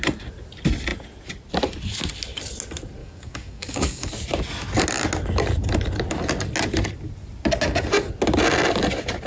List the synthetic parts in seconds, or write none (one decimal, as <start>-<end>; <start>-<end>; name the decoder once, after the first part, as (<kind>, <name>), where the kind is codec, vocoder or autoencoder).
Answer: 3.0-4.1 (codec, DAC)